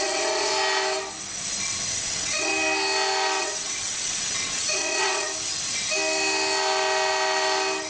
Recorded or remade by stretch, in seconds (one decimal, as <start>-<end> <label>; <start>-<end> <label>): 0.0-0.5 remade; 0.5-1.9 recorded; 1.9-2.5 remade; 2.5-3.4 recorded; 3.4-5.3 remade; 5.3-7.9 recorded